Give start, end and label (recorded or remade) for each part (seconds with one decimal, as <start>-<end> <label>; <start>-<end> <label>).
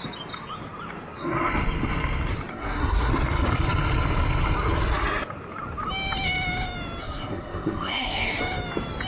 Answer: 0.0-2.5 recorded; 2.5-3.1 remade; 3.1-7.0 recorded; 7.0-8.4 remade; 8.4-9.1 recorded